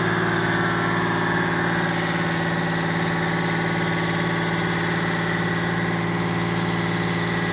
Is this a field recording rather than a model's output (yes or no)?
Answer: yes